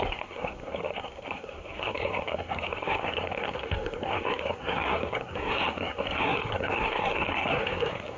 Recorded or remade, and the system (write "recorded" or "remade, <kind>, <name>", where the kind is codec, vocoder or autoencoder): remade, codec, SNAC